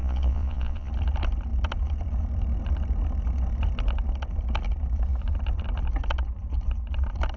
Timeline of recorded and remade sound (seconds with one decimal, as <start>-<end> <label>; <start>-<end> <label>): 0.0-0.9 remade; 0.9-7.4 recorded